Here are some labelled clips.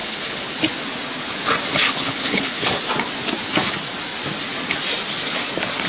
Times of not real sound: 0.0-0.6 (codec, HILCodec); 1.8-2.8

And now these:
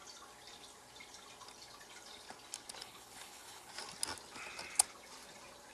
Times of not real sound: 2.8-3.7 (codec, HILCodec)

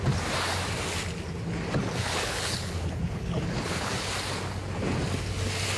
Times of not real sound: 2.0-3.9 (codec, HILCodec)

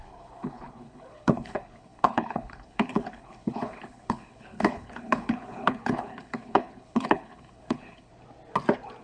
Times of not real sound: 0.0-8.1 (codec, HILCodec)

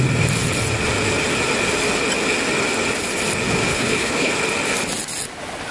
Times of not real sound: 3.7-4.3 (codec, HILCodec)

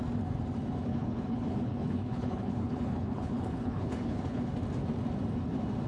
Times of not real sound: 0.9-4.4 (codec, HILCodec)

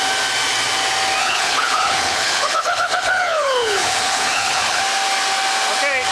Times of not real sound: 1.2-4.8 (codec, HILCodec)